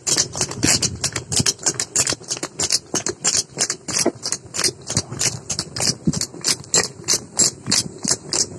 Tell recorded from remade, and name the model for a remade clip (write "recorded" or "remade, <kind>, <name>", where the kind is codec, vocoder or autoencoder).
recorded